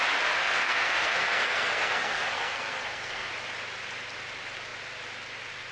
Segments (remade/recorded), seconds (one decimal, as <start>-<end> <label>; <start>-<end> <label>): 0.0-0.4 recorded; 0.4-3.3 remade; 3.3-5.7 recorded